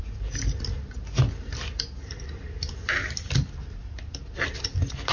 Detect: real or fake real